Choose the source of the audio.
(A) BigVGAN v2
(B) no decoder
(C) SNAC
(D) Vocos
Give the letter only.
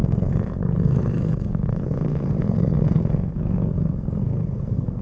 C